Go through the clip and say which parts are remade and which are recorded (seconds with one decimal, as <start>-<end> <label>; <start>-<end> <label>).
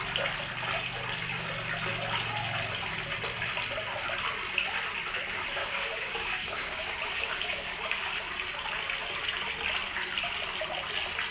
0.0-5.6 recorded; 5.6-8.2 remade; 8.2-11.3 recorded